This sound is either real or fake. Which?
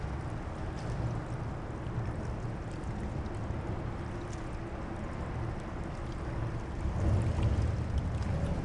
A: real